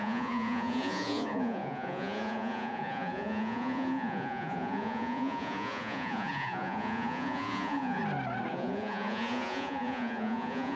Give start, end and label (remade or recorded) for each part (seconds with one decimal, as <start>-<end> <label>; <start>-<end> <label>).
0.0-8.0 remade; 8.0-8.5 recorded; 8.5-10.8 remade